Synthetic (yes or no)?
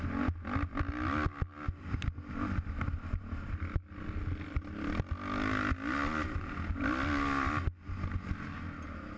no